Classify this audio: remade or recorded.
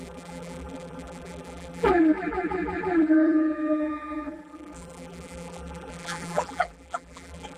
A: remade